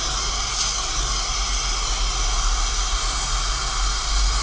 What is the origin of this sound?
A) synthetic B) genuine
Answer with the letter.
B